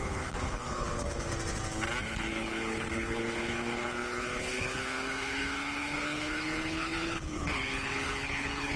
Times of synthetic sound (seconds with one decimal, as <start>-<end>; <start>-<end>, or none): 0.0-1.3; 2.0-8.8